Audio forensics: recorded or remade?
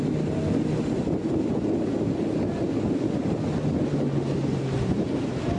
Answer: recorded